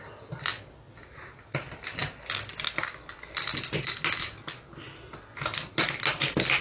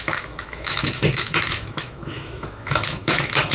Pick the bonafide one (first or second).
first